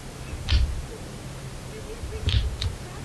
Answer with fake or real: real